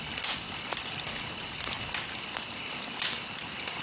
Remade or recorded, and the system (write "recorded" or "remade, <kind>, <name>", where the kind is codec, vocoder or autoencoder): recorded